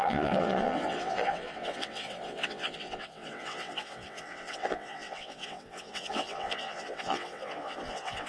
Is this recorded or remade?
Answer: remade